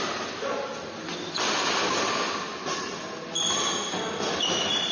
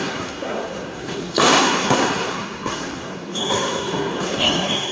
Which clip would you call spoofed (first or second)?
second